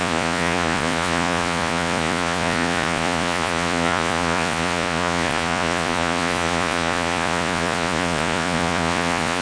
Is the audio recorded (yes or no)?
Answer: no